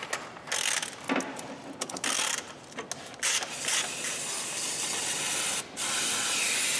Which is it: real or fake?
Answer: real